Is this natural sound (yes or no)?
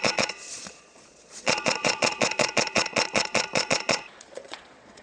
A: no